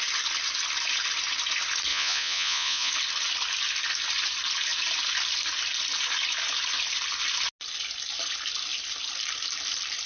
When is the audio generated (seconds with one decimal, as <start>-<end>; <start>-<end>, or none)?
1.9-2.9